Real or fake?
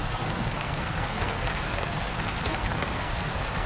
fake